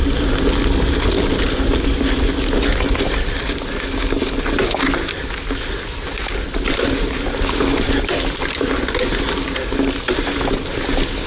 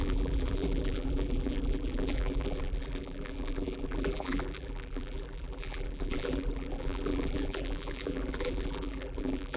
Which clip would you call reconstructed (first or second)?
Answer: second